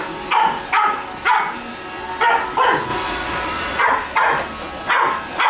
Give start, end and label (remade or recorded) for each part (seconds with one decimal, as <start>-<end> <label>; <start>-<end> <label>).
0.0-2.9 recorded; 2.9-3.8 remade; 3.8-5.5 recorded